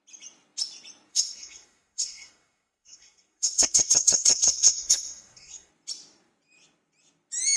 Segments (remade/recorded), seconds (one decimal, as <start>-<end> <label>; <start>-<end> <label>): 0.0-1.1 recorded; 1.1-5.7 remade; 5.7-7.6 recorded